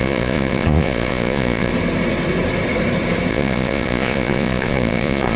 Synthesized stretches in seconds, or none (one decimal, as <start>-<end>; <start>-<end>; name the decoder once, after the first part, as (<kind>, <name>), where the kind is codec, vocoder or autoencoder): 0.0-1.7 (vocoder, Vocos); 3.3-5.4